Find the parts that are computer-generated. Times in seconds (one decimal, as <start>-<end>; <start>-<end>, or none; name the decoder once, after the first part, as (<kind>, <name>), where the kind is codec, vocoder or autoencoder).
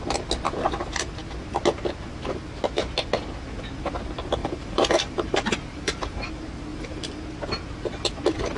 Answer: 4.4-6.3 (vocoder, BigVGAN v2); 6.7-7.2